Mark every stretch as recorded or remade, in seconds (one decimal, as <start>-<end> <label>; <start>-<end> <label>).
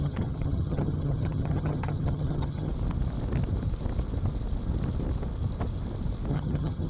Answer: 0.0-2.7 remade; 2.7-6.3 recorded; 6.3-6.9 remade